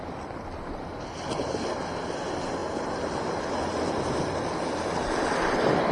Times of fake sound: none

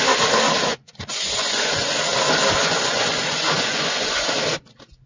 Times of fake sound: 0.7-1.9 (vocoder, Vocos); 2.6-4.3